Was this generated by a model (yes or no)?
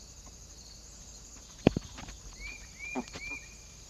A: yes